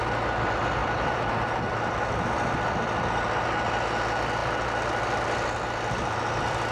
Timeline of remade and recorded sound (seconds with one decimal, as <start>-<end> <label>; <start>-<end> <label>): 0.0-0.8 recorded; 0.8-1.3 remade; 1.3-6.7 recorded